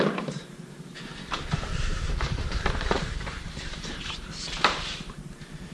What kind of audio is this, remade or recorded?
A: remade